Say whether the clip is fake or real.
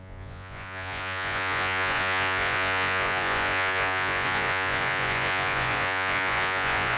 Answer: fake